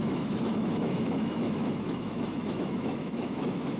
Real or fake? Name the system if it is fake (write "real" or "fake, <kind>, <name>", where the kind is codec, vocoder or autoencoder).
fake, autoencoder, DAC-VAE